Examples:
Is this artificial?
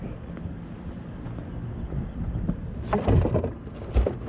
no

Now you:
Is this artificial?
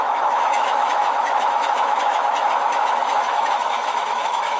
yes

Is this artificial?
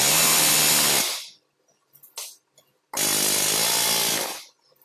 no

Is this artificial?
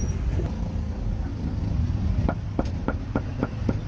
no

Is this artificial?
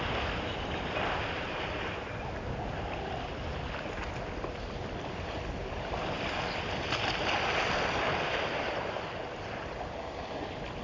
no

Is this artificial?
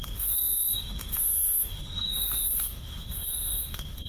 yes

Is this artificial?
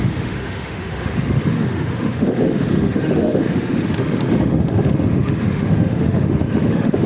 yes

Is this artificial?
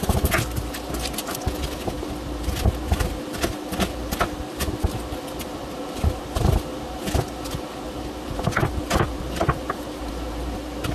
no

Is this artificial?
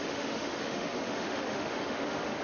yes